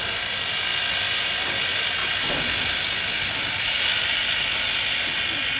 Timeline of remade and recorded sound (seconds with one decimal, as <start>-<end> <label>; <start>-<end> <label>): 0.0-5.6 recorded